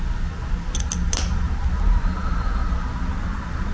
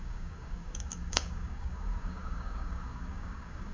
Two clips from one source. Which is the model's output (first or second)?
second